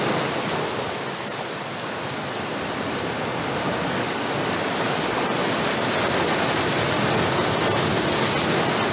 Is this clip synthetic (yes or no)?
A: no